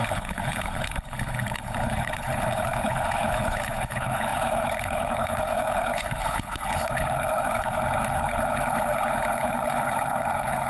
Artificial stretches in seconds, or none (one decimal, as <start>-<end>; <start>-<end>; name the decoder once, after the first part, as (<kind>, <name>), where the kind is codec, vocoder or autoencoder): 0.0-10.7 (codec, HILCodec)